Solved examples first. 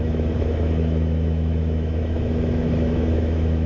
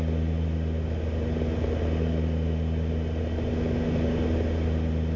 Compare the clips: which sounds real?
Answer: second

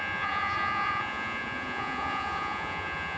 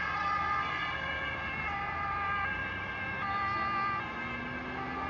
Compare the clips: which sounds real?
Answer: second